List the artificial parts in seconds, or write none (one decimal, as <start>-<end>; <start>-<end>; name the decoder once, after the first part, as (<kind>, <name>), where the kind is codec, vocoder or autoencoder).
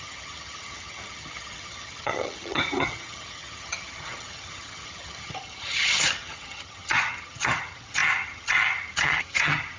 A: 0.0-9.8 (vocoder, HiFi-GAN)